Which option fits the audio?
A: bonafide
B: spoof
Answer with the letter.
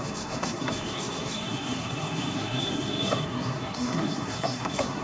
B